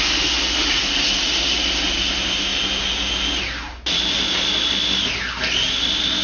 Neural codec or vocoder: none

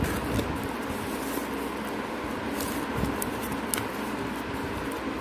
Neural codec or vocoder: none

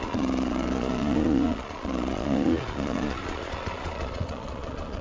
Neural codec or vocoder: vocoder, Vocos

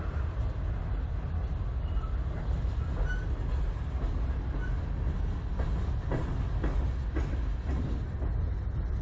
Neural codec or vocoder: none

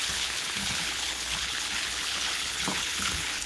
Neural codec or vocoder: codec, HILCodec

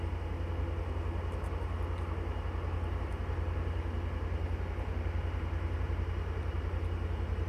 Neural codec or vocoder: none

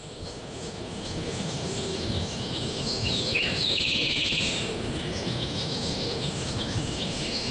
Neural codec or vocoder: autoencoder, DAC-VAE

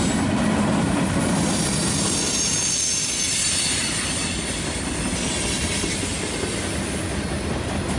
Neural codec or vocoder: none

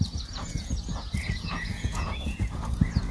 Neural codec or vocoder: vocoder, Vocos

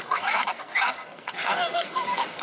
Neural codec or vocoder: codec, SNAC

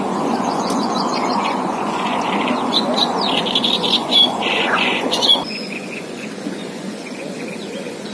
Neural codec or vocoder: vocoder, Vocos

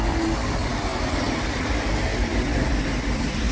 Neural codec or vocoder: none